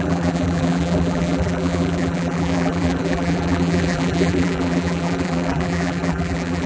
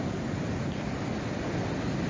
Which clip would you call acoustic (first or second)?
second